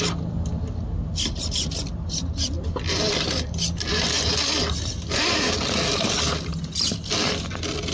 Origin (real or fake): real